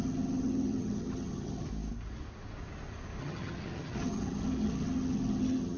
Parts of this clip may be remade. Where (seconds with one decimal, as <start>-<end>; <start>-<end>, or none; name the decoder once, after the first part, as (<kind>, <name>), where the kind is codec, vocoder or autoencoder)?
0.0-1.7 (vocoder, HiFi-GAN); 3.2-5.8